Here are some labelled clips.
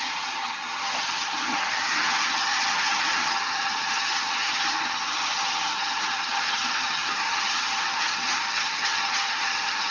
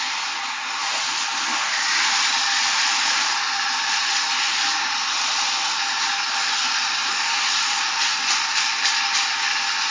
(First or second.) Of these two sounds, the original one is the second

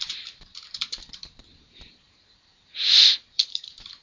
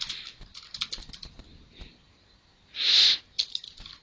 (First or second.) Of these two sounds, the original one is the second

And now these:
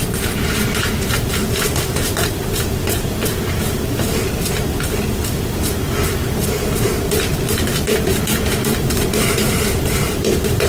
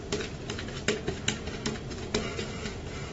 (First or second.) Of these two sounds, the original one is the second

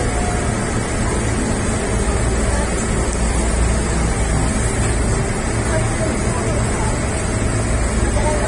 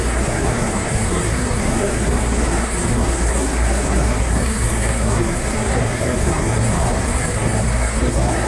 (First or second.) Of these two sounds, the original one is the first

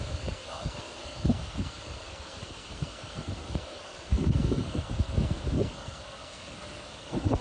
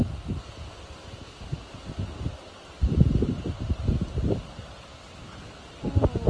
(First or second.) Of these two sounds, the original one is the second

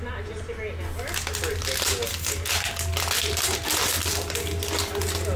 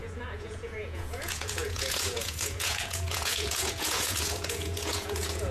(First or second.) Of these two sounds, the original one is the first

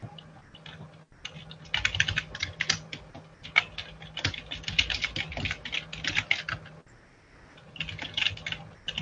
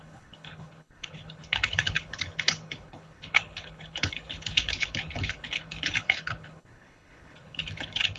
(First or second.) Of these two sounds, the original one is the first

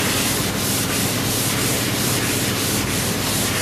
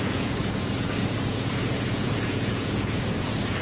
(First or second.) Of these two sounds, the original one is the first